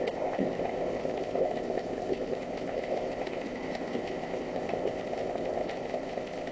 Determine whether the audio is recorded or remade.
remade